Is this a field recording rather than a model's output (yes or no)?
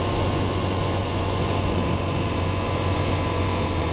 no